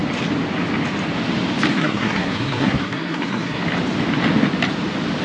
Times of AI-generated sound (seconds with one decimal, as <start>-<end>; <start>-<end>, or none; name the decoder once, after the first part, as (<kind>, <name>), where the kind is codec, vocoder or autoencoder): 1.7-3.6 (codec, SNAC)

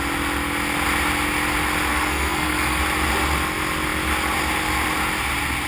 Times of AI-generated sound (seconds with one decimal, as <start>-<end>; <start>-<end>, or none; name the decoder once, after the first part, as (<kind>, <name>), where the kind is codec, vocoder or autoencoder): 1.9-2.8 (codec, SNAC)

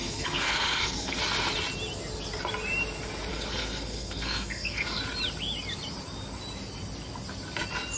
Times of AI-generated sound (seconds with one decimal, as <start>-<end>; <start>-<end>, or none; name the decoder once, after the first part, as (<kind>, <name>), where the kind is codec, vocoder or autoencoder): 0.0-1.2 (codec, SNAC); 3.3-5.0

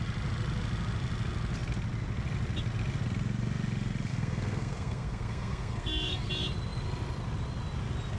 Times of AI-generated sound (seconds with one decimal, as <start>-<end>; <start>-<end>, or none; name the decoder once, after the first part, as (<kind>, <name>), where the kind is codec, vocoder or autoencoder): 4.1-6.3 (codec, SNAC)

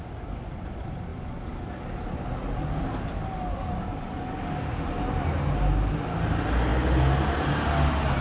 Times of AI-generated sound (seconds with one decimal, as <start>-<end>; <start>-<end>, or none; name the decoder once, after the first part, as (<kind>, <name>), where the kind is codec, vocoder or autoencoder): none

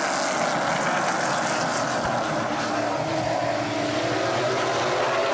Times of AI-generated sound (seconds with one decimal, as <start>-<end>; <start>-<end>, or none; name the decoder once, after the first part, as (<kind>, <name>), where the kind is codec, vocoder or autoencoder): none

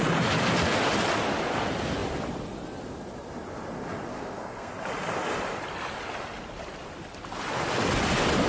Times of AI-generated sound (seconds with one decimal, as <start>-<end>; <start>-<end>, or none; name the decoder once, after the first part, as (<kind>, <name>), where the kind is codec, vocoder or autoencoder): 4.1-4.7 (codec, SNAC)